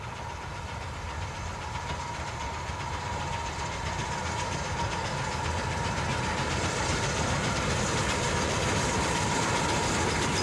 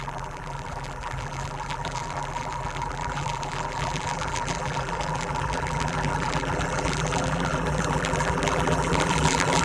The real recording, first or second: first